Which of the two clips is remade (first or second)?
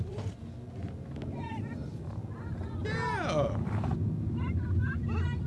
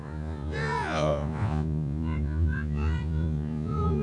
second